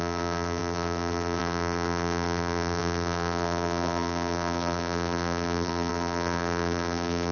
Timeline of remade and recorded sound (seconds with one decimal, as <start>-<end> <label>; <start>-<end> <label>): 0.0-7.3 remade